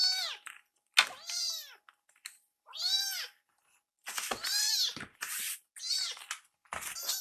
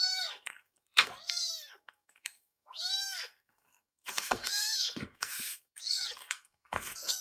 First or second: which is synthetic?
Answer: second